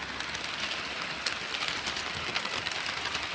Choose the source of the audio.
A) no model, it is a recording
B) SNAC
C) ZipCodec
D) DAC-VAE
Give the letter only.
A